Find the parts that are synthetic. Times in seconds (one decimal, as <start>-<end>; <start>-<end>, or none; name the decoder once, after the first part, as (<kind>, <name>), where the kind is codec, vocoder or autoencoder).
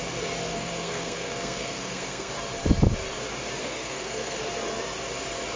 0.5-2.3 (codec, SNAC); 3.6-4.4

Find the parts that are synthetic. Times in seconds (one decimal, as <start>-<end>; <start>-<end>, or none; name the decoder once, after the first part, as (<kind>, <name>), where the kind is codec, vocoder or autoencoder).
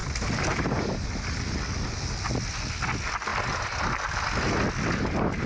0.0-1.4 (vocoder, BigVGAN v2)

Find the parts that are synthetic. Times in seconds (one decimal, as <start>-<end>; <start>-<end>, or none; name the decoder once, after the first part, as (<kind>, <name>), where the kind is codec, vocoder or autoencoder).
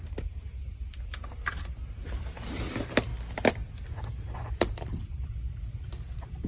0.0-3.1 (vocoder, BigVGAN v2); 3.7-6.5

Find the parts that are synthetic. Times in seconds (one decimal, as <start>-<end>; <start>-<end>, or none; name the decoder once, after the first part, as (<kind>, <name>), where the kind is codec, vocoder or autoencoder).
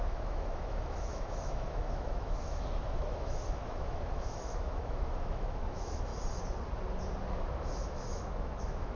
0.0-6.1 (autoencoder, DAC-VAE); 7.3-9.0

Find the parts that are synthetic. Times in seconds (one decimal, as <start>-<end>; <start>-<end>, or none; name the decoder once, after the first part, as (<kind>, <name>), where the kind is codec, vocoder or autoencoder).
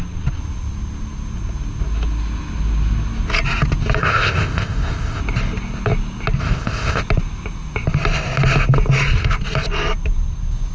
4.0-5.2 (codec, ZipCodec); 6.4-7.0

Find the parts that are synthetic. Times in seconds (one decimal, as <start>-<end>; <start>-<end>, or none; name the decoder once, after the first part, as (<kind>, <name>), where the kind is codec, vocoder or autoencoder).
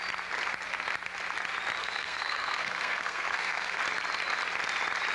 1.8-3.8 (codec, SNAC)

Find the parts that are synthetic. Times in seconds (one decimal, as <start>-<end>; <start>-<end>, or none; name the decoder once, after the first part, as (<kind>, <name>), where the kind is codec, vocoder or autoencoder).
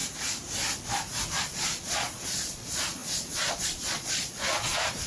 1.3-5.1 (vocoder, Vocos)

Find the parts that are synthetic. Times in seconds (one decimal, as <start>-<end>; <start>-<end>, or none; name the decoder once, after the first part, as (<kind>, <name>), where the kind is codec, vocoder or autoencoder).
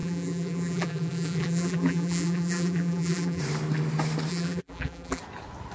0.0-3.4 (vocoder, BigVGAN v2); 4.3-5.2